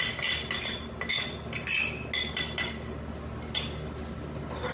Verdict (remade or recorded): recorded